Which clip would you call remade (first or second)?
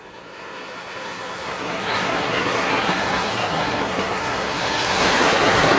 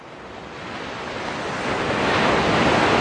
first